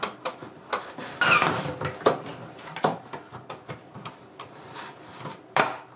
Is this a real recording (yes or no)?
no